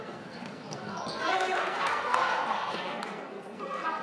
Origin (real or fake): fake